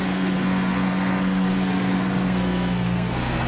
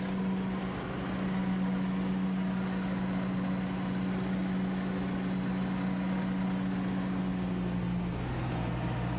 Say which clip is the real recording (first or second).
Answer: second